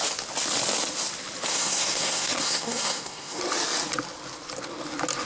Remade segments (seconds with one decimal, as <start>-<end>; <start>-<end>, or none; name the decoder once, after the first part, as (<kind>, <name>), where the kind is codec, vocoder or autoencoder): 1.5-3.4 (codec, SNAC)